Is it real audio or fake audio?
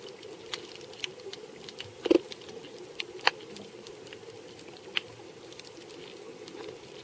real